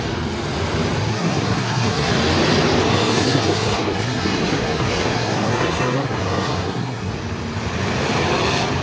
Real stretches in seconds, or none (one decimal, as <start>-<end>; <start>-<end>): 0.0-1.1; 2.1-2.9; 7.1-8.8